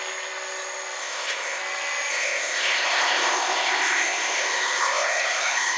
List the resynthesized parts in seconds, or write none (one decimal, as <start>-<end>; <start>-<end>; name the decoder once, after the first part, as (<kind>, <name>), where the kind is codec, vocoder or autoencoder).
1.0-1.6 (codec, ZipCodec); 2.1-5.8